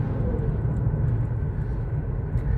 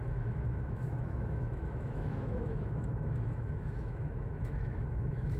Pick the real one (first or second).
first